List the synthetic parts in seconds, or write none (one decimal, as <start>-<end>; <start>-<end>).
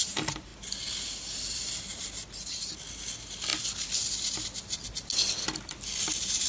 none